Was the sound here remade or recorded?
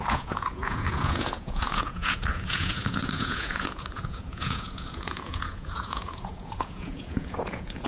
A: remade